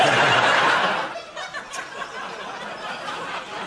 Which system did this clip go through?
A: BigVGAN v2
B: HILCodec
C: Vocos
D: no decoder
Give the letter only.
D